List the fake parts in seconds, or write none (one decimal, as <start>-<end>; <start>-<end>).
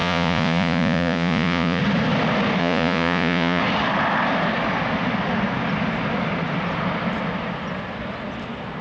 0.0-1.8; 2.6-3.6